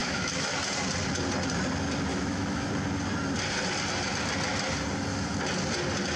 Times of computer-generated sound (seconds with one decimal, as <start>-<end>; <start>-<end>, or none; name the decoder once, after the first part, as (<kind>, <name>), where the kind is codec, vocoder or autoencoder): 0.0-0.5 (autoencoder, DAC-VAE); 2.1-2.7